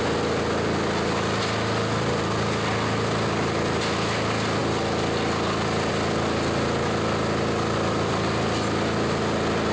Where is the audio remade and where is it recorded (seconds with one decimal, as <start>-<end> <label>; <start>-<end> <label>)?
0.0-9.7 recorded